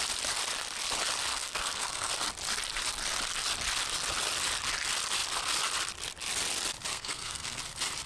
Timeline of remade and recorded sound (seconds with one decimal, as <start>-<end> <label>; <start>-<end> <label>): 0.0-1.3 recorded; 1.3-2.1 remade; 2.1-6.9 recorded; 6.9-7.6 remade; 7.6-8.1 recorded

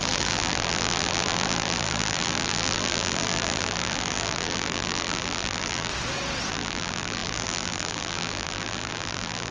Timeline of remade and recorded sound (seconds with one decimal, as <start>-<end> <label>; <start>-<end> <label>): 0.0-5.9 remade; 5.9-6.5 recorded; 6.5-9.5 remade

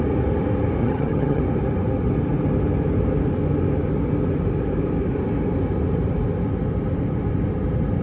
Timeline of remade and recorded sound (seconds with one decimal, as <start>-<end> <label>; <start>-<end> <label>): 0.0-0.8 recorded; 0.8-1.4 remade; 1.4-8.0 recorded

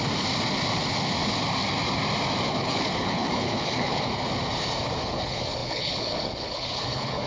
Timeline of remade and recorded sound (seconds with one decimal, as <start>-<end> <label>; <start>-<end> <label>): 0.0-2.5 recorded; 2.5-4.1 remade; 4.1-5.0 recorded; 5.0-7.3 remade